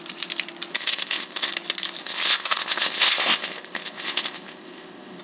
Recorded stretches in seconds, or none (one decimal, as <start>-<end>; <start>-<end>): 0.0-0.7; 1.5-2.0